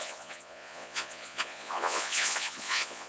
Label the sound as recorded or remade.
remade